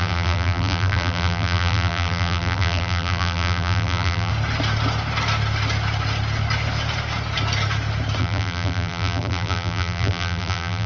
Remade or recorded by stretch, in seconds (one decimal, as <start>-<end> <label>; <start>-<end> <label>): 0.0-4.3 remade; 4.3-8.2 recorded; 8.2-10.9 remade